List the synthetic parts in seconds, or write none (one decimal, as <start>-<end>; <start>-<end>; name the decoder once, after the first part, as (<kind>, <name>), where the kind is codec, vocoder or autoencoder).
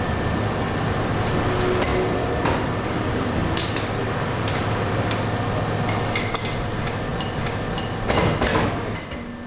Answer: 1.9-5.0 (vocoder, BigVGAN v2); 7.1-7.7